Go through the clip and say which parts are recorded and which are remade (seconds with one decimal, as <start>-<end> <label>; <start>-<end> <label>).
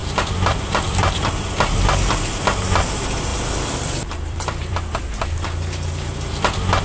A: 0.0-1.3 remade; 1.3-3.3 recorded; 3.3-4.8 remade; 4.8-6.8 recorded